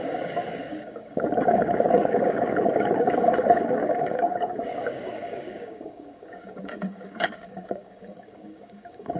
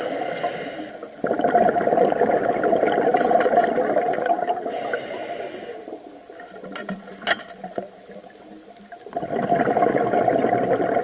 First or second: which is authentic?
second